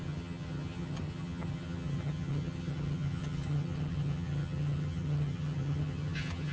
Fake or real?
fake